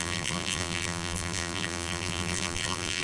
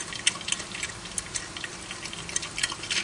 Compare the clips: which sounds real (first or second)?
second